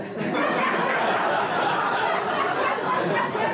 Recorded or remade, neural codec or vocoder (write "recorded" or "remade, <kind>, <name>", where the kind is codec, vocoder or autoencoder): recorded